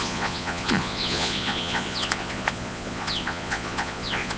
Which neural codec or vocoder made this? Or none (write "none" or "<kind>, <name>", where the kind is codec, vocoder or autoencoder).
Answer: vocoder, Vocos